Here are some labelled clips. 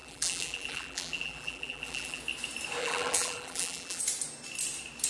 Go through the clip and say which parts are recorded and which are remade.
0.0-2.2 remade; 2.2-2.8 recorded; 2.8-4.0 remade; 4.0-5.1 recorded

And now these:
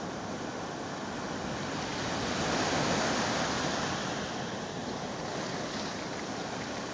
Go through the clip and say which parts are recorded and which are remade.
0.0-4.8 recorded; 4.8-5.8 remade; 5.8-6.9 recorded

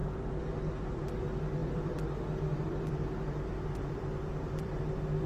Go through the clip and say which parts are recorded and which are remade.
0.0-1.0 remade; 1.0-1.6 recorded; 1.6-4.8 remade; 4.8-5.3 recorded

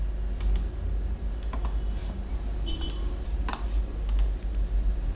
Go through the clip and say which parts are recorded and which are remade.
0.0-2.0 recorded; 2.0-3.1 remade; 3.1-5.2 recorded

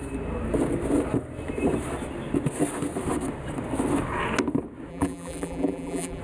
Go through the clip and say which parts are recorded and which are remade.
0.0-4.9 recorded; 4.9-6.2 remade

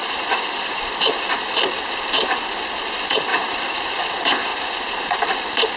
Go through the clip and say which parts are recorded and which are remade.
0.0-1.4 remade; 1.4-3.3 recorded; 3.3-4.0 remade; 4.0-5.8 recorded

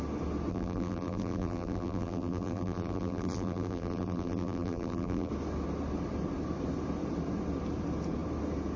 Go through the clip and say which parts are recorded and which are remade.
0.0-0.5 recorded; 0.5-5.3 remade; 5.3-8.8 recorded